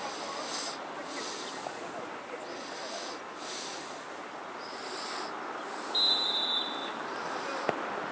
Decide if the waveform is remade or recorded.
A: recorded